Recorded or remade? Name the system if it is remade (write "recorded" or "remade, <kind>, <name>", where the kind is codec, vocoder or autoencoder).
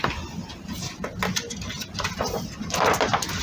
recorded